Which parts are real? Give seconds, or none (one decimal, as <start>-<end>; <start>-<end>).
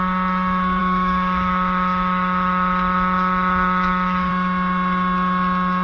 0.0-0.8; 4.3-5.8